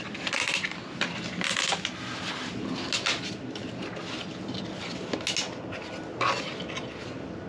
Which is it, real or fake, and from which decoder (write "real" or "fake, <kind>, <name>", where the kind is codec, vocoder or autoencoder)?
real